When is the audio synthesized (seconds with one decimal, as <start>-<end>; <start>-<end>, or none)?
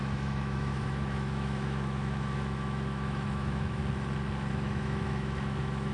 0.0-3.8; 4.5-5.9